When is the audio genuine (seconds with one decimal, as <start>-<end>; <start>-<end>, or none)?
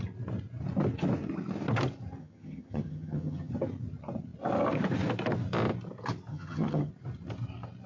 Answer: 0.0-2.2; 3.5-6.3; 6.9-7.9